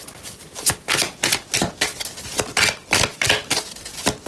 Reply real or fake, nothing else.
real